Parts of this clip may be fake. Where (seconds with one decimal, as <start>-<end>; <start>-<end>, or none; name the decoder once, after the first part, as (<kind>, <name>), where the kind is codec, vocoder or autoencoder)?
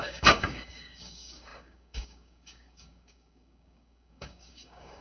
0.0-5.0 (codec, DAC)